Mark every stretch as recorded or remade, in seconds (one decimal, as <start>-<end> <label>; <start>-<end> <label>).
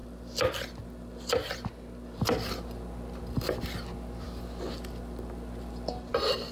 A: 0.0-6.5 recorded